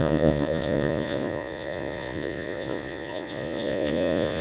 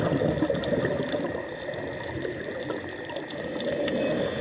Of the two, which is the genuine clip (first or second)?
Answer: second